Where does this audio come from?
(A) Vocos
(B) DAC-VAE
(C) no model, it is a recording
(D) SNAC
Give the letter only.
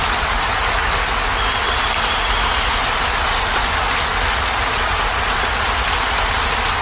C